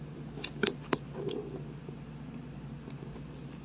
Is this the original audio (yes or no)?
yes